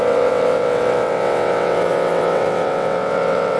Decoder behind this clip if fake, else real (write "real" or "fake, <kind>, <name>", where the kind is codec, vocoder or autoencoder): fake, vocoder, WaveNeXt